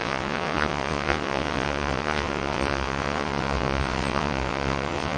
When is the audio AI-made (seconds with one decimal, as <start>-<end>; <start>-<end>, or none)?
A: 0.0-5.2